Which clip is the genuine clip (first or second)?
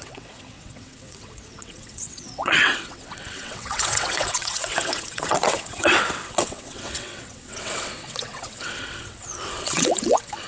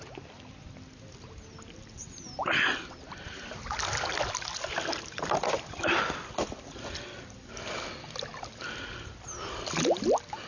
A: second